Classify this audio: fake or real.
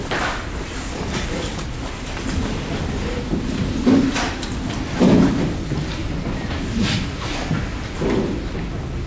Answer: real